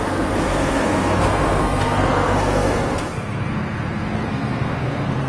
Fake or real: fake